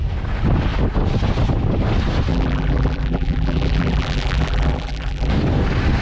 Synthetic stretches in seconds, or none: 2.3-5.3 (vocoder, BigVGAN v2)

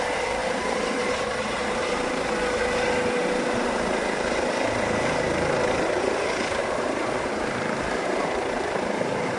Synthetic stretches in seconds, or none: 0.4-2.1 (vocoder, BigVGAN v2); 6.6-9.4

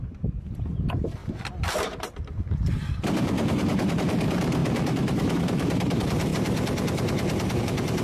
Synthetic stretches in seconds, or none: 0.0-6.3 (vocoder, BigVGAN v2); 7.6-8.0